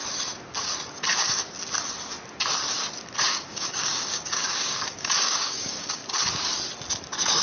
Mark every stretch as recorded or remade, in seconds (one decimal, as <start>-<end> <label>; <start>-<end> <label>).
0.0-3.3 recorded; 3.3-6.0 remade; 6.0-7.4 recorded